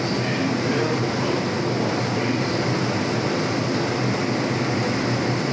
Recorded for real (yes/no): yes